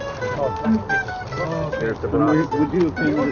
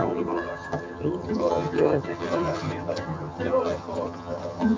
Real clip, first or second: first